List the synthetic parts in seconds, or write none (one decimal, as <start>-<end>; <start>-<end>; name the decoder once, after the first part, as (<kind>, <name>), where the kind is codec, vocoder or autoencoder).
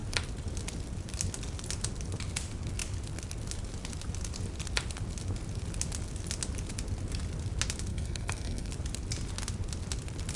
7.9-8.7 (codec, SNAC)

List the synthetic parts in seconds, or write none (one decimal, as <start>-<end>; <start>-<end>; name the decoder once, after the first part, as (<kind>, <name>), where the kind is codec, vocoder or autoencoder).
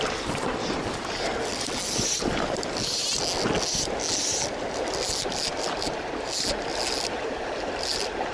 none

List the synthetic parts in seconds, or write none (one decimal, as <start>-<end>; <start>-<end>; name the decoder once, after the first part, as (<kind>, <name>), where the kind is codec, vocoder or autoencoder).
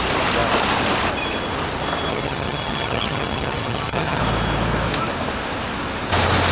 2.1-4.2 (vocoder, HiFi-GAN)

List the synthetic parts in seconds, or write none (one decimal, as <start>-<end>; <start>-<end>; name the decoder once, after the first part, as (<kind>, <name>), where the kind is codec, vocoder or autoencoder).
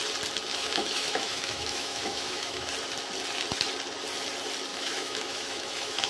0.5-2.7 (autoencoder, DAC-VAE); 4.7-6.1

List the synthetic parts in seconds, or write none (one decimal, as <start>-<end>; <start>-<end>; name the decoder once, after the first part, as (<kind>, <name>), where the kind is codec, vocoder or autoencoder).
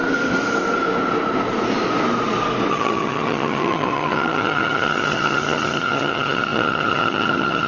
2.7-7.7 (vocoder, HiFi-GAN)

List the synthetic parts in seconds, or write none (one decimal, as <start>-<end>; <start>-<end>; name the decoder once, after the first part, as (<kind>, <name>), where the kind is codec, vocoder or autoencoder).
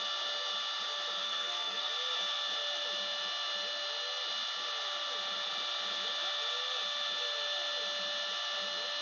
1.2-1.9 (codec, SNAC)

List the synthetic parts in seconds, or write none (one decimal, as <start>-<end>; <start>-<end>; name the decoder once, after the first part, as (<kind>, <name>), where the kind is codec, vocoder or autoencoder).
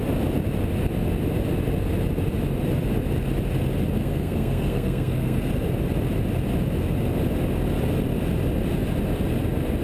4.0-5.5 (codec, SNAC)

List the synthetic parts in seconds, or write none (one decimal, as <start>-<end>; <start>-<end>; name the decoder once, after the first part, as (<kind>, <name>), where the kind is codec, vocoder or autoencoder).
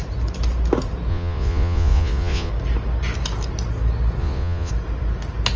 1.1-2.5 (vocoder, Vocos); 4.2-4.7